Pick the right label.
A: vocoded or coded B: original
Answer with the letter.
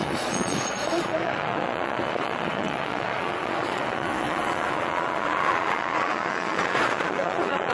A